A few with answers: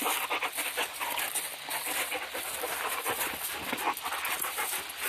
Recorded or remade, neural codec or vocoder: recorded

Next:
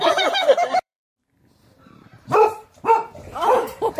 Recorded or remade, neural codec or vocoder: remade, vocoder, BigVGAN v2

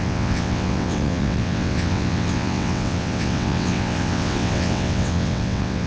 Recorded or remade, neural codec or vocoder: remade, vocoder, WaveNeXt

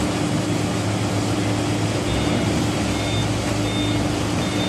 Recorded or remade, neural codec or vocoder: recorded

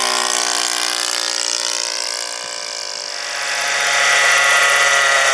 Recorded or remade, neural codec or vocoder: recorded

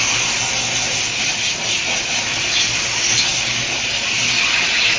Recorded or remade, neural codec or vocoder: recorded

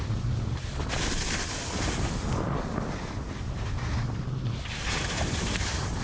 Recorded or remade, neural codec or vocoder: recorded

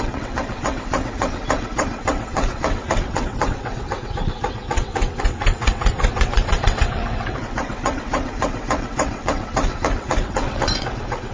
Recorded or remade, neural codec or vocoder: remade, vocoder, WaveNeXt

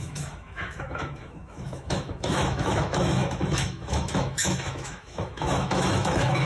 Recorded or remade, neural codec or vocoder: remade, autoencoder, DAC-VAE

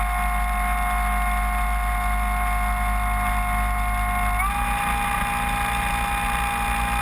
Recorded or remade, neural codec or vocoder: recorded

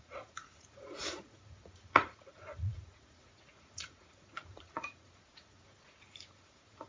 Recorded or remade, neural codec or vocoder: remade, vocoder, Vocos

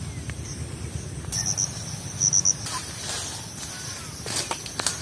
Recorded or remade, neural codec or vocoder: recorded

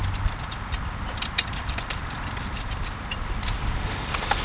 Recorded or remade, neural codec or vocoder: recorded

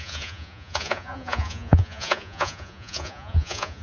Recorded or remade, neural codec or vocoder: remade, vocoder, Vocos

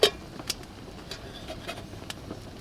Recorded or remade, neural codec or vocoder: recorded